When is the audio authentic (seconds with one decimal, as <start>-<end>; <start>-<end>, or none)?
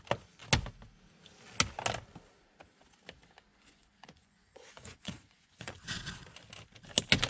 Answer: 0.0-3.5; 6.0-7.3